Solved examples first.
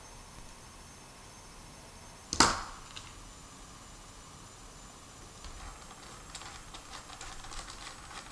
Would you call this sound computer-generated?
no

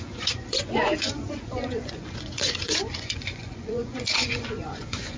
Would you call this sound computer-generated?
yes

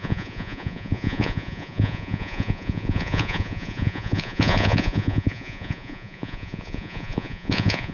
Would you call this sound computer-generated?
yes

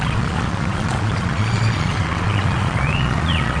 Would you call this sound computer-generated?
yes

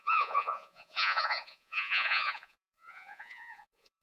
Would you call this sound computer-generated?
yes